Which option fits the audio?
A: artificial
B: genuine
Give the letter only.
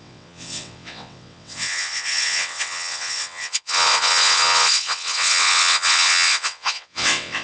A